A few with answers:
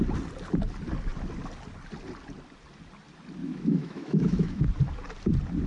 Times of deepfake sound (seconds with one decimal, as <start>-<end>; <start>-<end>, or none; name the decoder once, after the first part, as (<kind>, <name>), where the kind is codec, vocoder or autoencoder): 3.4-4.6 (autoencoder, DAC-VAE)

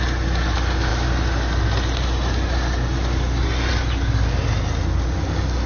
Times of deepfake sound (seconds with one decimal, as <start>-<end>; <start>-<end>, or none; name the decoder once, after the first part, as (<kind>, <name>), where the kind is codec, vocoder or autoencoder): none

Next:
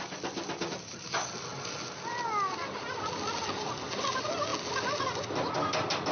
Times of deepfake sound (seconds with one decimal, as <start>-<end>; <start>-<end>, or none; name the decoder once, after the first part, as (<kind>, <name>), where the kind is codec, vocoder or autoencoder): none